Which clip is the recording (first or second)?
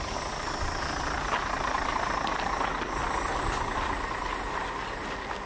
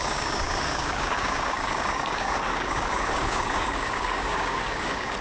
first